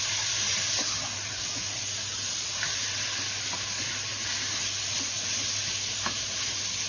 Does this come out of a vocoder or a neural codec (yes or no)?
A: no